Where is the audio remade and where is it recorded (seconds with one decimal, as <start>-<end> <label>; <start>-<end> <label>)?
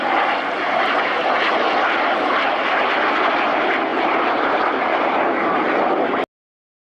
0.0-3.9 recorded; 3.9-5.3 remade; 5.3-6.8 recorded